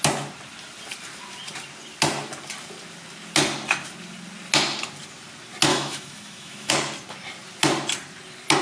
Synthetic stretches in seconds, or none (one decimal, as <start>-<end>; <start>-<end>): 5.7-6.7